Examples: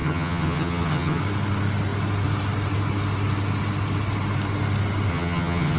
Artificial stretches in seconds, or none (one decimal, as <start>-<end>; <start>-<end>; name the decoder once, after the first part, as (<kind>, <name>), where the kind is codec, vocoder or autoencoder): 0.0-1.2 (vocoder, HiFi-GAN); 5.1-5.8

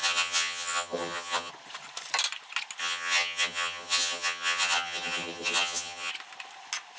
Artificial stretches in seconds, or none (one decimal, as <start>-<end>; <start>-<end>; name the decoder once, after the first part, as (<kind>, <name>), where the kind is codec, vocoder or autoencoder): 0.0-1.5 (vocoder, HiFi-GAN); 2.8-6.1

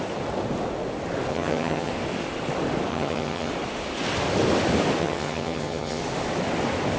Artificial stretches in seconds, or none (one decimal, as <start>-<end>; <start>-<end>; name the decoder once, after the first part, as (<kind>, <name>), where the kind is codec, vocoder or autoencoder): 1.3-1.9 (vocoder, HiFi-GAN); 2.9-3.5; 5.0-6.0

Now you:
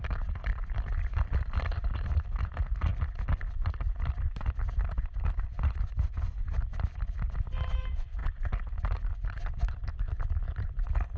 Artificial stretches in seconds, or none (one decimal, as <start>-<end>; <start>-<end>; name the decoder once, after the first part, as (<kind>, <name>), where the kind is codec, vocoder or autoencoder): none